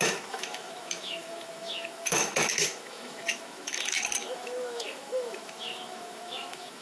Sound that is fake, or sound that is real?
fake